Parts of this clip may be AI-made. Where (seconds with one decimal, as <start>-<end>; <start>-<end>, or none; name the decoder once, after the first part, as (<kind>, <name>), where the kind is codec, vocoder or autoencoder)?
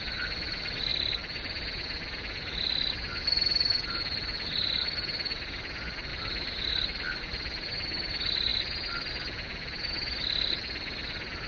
none